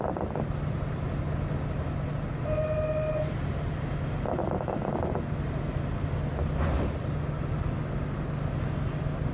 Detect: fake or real real